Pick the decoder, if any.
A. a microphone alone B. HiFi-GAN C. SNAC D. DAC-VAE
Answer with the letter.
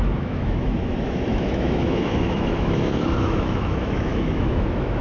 D